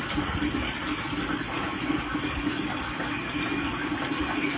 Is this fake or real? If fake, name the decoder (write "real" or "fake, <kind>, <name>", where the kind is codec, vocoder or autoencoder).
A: real